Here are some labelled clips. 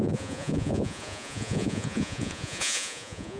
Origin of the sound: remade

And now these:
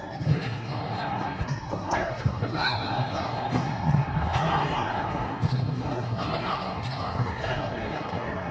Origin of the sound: remade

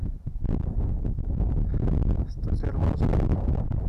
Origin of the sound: recorded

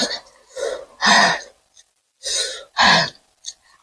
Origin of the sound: remade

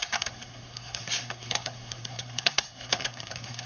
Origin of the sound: remade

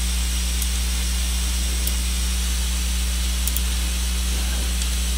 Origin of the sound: recorded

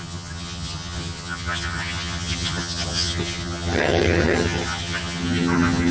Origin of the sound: remade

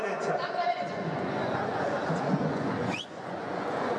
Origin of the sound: remade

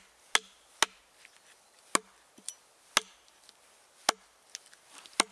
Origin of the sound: recorded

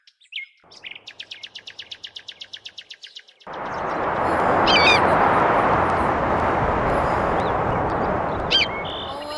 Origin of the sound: recorded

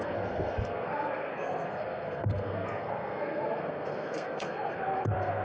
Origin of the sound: remade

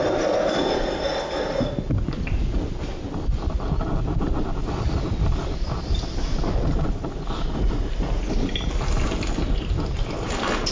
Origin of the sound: recorded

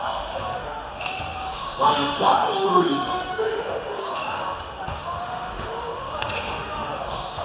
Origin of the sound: remade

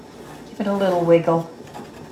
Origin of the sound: recorded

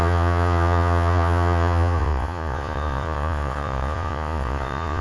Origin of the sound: remade